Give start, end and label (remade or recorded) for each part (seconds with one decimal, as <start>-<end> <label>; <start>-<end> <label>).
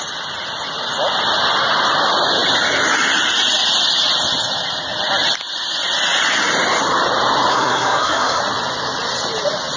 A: 0.0-7.5 recorded; 7.5-8.4 remade; 8.4-9.8 recorded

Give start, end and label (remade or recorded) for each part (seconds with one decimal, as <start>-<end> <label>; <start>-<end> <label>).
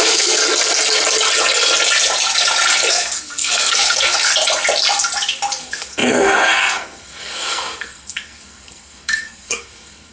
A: 0.0-0.4 remade; 0.4-2.9 recorded; 2.9-4.3 remade; 4.3-5.6 recorded; 5.6-10.1 remade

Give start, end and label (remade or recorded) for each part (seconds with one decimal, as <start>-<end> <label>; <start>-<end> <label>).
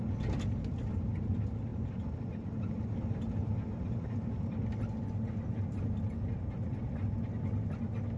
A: 0.0-8.2 recorded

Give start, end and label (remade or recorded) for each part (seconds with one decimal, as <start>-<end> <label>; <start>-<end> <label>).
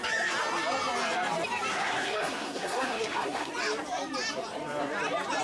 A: 0.0-1.7 recorded; 1.7-3.5 remade; 3.5-5.4 recorded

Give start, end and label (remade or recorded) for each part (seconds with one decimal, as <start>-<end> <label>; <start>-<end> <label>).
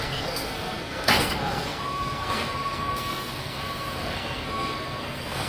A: 0.0-5.5 remade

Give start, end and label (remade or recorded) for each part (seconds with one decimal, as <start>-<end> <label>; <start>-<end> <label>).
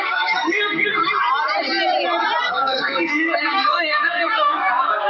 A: 0.0-1.0 remade; 1.0-2.4 recorded; 2.4-5.1 remade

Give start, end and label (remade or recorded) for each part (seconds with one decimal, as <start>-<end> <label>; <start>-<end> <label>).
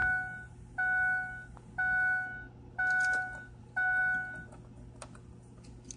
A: 0.0-6.0 recorded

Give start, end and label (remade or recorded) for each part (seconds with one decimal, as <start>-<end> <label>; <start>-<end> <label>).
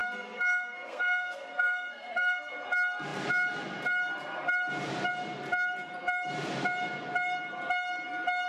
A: 0.0-2.5 remade; 2.5-8.5 recorded